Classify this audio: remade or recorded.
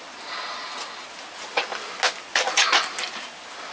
recorded